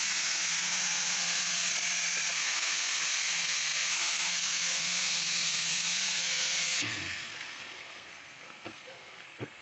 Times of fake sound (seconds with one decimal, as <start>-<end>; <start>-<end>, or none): 0.0-1.7; 2.3-9.6

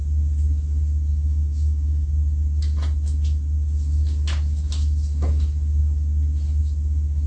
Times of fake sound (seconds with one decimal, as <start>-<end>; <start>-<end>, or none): 1.1-2.1

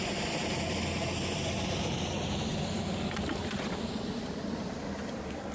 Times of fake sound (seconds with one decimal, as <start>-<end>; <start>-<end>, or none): 1.7-5.5

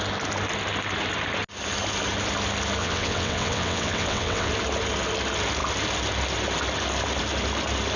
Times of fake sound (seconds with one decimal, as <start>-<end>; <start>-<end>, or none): 2.8-4.5